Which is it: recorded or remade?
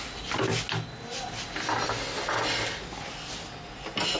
recorded